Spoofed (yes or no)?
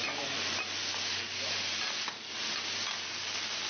no